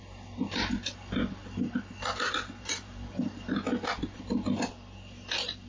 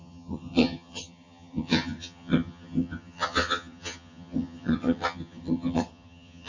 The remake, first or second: second